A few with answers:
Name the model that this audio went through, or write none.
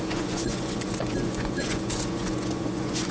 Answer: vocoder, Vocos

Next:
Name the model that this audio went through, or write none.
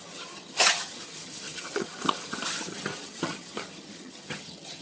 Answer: vocoder, HiFi-GAN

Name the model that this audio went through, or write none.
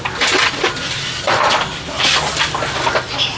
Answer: none